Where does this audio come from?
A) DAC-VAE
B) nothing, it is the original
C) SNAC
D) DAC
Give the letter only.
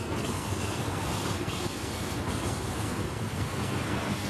C